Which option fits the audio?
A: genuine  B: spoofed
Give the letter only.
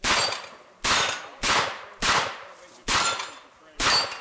A